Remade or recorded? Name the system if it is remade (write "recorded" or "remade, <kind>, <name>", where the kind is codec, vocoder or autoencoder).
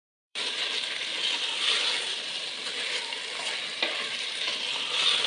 remade, vocoder, BigVGAN v2